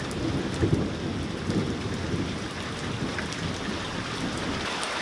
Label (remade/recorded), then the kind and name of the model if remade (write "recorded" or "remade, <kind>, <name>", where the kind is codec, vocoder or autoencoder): recorded